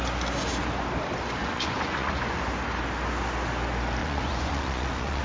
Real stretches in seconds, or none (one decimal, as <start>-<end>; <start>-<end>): 0.0-1.4; 2.4-4.0